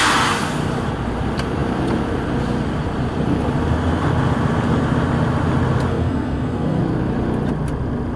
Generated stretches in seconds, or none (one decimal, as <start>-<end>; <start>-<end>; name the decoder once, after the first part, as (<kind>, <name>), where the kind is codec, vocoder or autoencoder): 5.9-6.8 (codec, SNAC)